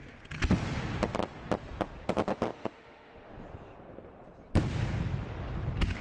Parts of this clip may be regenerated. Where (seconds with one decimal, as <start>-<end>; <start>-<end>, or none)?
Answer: 2.5-3.3